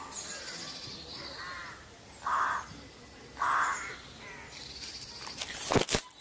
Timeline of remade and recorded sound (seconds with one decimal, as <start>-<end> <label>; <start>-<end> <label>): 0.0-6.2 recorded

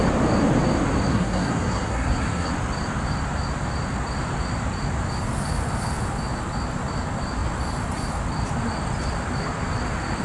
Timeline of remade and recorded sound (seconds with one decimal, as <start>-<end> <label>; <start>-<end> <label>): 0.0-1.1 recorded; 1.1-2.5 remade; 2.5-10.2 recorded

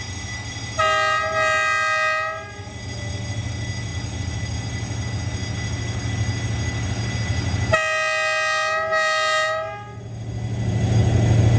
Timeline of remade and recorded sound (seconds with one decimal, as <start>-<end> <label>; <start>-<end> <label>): 0.0-11.6 recorded

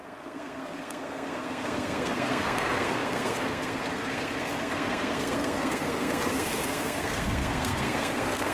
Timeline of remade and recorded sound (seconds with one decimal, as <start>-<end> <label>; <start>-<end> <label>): 0.0-8.5 remade

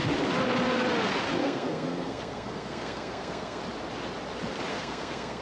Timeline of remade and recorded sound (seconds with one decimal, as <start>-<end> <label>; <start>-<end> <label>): 0.0-1.4 recorded; 1.4-3.6 remade; 3.6-4.7 recorded; 4.7-5.4 remade

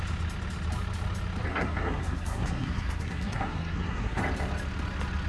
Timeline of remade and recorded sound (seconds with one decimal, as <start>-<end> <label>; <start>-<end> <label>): 0.0-1.5 recorded; 1.5-4.2 remade; 4.2-5.3 recorded

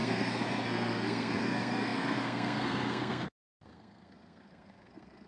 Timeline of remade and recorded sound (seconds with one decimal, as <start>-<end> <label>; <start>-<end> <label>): 0.0-5.3 remade

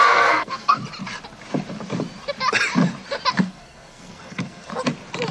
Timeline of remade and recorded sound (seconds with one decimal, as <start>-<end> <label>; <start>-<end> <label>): 0.0-0.8 remade; 0.8-3.3 recorded; 3.3-4.7 remade; 4.7-5.3 recorded